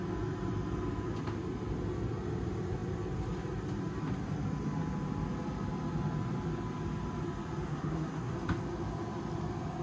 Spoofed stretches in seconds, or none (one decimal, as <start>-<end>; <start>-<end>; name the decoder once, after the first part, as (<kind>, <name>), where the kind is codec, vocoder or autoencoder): 7.7-8.3 (codec, SNAC)